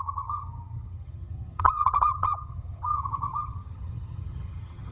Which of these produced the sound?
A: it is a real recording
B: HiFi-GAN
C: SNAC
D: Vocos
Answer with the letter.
B